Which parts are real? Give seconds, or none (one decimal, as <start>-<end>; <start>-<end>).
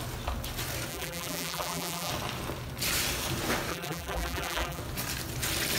0.0-0.9; 2.1-3.7; 4.8-5.8